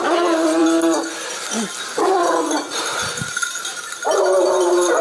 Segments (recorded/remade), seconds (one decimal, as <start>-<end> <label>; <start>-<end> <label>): 0.0-0.6 recorded; 0.6-1.1 remade; 1.1-2.2 recorded; 2.2-5.0 remade